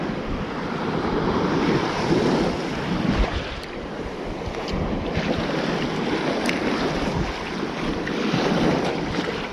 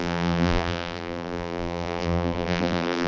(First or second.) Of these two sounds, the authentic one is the first